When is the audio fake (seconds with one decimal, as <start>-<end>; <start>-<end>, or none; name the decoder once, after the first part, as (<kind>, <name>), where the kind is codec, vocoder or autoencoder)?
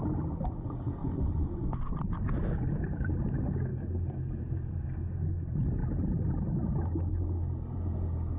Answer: 1.0-1.7 (vocoder, Vocos)